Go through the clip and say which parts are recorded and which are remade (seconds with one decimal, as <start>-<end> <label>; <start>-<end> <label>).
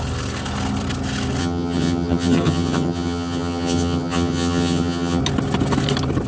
0.0-1.4 recorded; 1.4-5.2 remade; 5.2-6.3 recorded